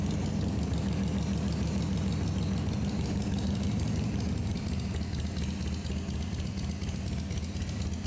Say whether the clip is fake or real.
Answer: real